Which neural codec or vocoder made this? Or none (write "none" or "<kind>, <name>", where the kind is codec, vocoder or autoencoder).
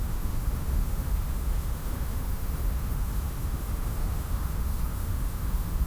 autoencoder, DAC-VAE